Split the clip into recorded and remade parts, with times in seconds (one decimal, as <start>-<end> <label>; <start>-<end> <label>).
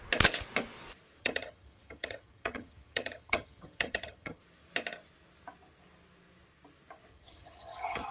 0.0-1.2 recorded; 1.2-4.4 remade; 4.4-7.1 recorded; 7.1-8.1 remade